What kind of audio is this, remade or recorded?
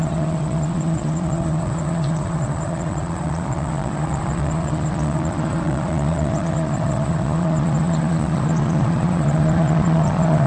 remade